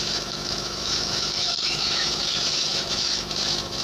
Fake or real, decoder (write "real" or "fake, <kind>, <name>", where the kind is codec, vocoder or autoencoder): fake, autoencoder, DAC-VAE